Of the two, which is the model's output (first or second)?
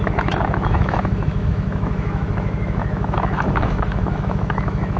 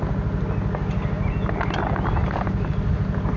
first